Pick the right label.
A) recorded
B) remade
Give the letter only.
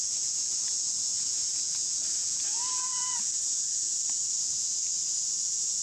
B